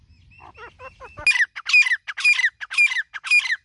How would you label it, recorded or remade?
recorded